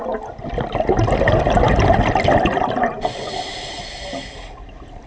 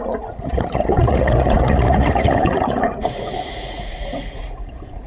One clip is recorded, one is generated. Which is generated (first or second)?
second